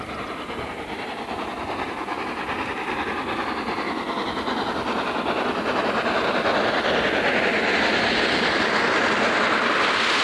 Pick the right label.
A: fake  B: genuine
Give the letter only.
B